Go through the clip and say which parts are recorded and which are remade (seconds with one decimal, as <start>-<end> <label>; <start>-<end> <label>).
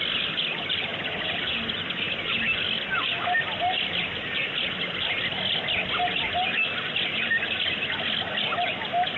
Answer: 0.0-9.2 recorded